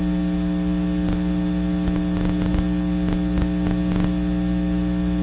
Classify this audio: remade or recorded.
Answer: recorded